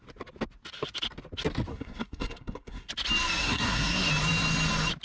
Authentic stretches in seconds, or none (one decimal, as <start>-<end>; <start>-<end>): 0.0-1.7; 2.9-3.4; 4.1-5.0